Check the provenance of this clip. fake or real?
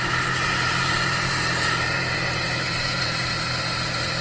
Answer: fake